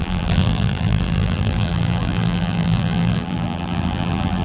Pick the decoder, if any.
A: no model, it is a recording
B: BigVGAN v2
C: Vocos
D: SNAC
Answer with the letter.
B